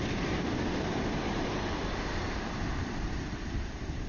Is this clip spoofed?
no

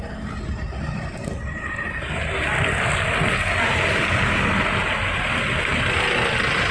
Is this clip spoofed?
no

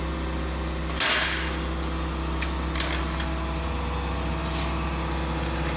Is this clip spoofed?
no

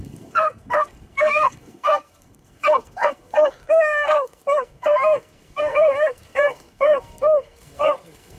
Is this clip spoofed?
yes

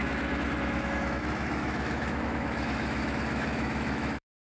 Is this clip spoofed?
yes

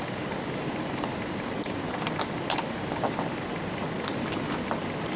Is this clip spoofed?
no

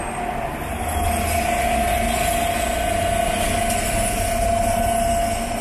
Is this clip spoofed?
no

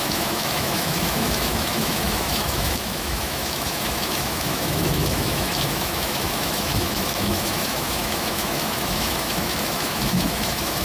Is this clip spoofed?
yes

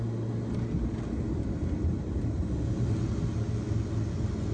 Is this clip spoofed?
no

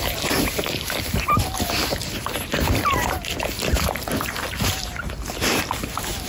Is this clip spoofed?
no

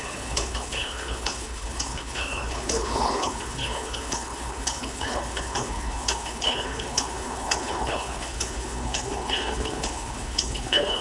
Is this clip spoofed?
yes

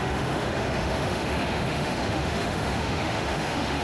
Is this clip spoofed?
yes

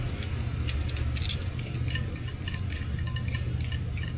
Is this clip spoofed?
no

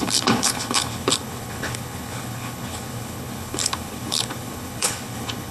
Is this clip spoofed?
yes